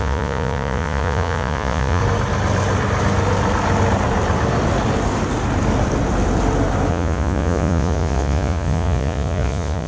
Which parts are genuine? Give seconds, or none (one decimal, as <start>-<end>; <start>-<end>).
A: 2.0-6.9